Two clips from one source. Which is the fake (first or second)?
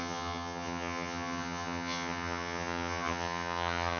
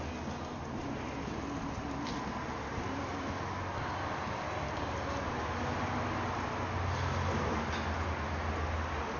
first